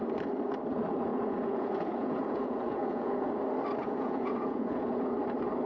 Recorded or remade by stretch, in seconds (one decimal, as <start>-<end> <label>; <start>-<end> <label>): 0.0-1.1 recorded; 1.1-3.3 remade; 3.3-3.8 recorded; 3.8-5.0 remade; 5.0-5.7 recorded